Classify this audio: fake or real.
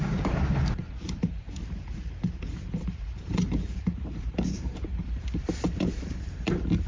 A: fake